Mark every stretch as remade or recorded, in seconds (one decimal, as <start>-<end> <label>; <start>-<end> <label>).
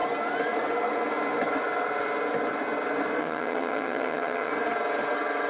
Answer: 0.0-3.2 recorded; 3.2-4.5 remade; 4.5-5.5 recorded